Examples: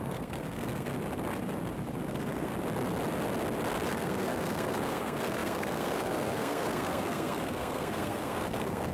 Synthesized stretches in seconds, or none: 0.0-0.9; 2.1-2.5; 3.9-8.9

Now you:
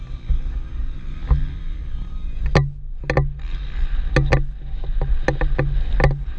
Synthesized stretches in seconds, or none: none